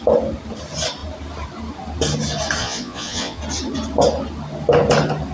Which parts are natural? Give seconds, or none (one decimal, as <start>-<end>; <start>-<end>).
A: 0.0-2.6; 3.4-5.3